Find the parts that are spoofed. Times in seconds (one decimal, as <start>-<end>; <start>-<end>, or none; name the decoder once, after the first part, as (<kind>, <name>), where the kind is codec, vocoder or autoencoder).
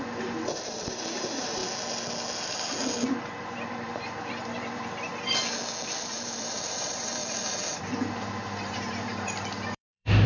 0.0-1.6 (vocoder, BigVGAN v2); 3.4-5.1; 6.0-7.2; 7.8-10.3